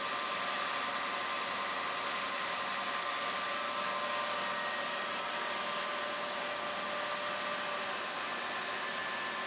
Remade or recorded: recorded